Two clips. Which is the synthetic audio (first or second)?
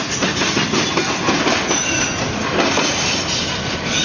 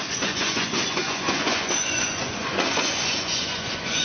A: second